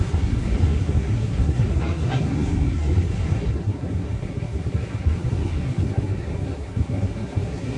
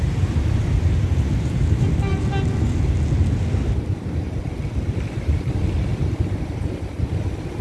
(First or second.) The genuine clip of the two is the second